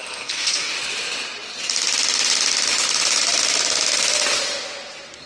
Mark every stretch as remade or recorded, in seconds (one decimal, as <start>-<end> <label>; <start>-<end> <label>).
0.0-0.7 remade; 0.7-5.3 recorded

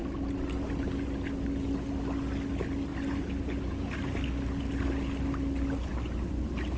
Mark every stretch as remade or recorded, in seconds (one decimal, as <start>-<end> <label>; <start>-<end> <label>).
0.0-6.8 recorded

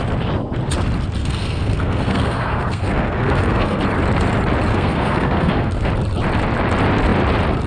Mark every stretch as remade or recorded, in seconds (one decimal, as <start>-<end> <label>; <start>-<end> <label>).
0.0-1.2 recorded; 1.2-3.8 remade; 3.8-4.7 recorded; 4.7-5.9 remade; 5.9-7.7 recorded

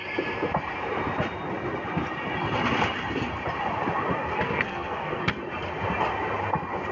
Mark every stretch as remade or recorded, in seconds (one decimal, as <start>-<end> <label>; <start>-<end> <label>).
0.0-4.3 recorded; 4.3-5.2 remade; 5.2-6.9 recorded

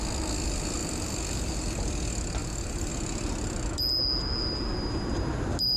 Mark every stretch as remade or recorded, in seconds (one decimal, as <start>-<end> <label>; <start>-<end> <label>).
0.0-0.8 recorded; 0.8-1.5 remade; 1.5-2.4 recorded; 2.4-2.9 remade; 2.9-5.8 recorded

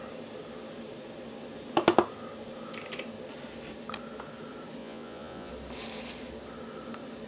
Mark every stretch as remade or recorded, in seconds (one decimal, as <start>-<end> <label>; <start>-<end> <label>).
0.0-4.8 recorded; 4.8-5.5 remade; 5.5-7.3 recorded